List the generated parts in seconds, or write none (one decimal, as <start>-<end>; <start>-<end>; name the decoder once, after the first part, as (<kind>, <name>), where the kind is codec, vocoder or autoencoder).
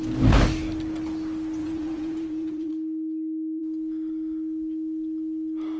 1.6-2.7 (vocoder, Vocos)